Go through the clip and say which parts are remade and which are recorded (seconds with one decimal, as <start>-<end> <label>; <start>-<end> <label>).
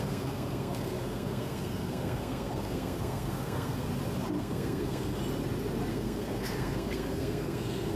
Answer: 0.0-3.9 remade; 3.9-4.4 recorded; 4.4-5.2 remade; 5.2-5.9 recorded; 5.9-8.0 remade